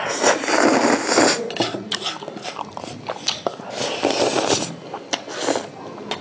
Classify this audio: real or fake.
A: real